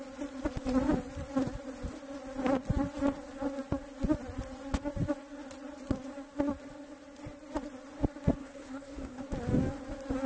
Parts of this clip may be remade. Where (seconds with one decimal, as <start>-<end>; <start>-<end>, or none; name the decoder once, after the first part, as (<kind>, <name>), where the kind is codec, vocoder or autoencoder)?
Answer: 8.4-9.2 (codec, SNAC)